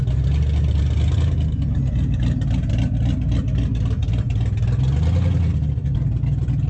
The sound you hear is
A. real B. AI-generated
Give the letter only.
A